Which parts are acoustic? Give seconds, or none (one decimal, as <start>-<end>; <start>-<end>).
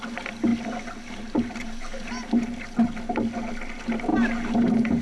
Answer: 0.0-5.0